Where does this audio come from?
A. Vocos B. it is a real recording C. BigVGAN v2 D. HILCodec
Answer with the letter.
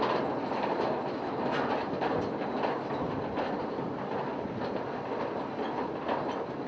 B